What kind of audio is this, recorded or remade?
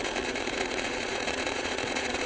remade